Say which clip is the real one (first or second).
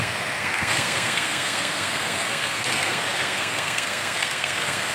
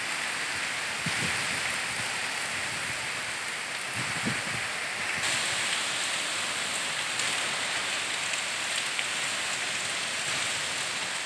second